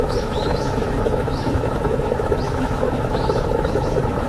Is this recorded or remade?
remade